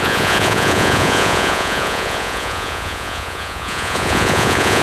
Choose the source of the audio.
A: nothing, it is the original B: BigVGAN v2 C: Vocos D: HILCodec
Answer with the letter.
C